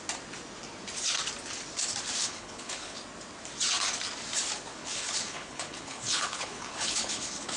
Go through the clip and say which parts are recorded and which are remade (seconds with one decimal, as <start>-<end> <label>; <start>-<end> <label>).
0.0-2.2 recorded; 2.2-3.0 remade; 3.0-4.7 recorded; 4.7-7.6 remade